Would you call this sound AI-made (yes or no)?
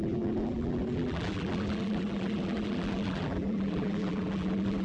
yes